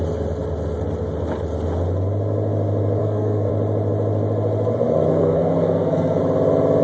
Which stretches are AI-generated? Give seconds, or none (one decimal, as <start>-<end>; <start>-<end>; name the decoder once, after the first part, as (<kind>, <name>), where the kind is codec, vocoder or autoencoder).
3.0-3.5 (codec, SNAC); 5.1-6.2